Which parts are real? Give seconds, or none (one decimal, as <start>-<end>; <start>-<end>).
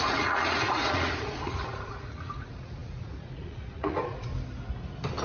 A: 4.3-5.2